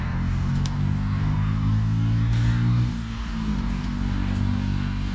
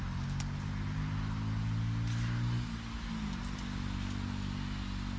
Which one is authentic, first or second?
second